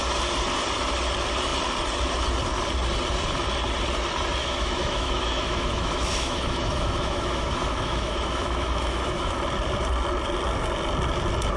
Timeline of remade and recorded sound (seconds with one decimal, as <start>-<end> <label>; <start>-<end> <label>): 0.0-4.4 recorded; 4.4-9.4 remade; 9.4-11.6 recorded